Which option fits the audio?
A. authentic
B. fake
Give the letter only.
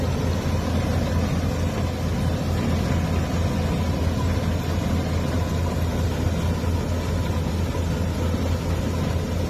A